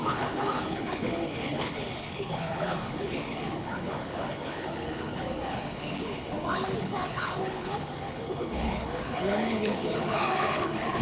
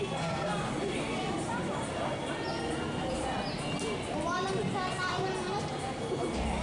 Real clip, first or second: second